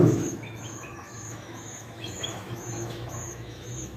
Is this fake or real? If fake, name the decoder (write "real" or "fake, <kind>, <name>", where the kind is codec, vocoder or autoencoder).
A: fake, autoencoder, DAC-VAE